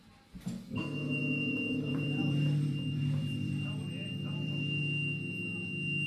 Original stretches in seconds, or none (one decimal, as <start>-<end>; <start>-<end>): 0.0-1.2; 4.8-6.1